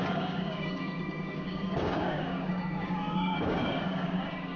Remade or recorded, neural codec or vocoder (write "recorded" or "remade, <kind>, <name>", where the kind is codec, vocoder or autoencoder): remade, codec, DAC